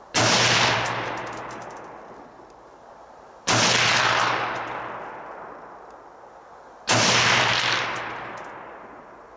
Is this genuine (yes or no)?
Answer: yes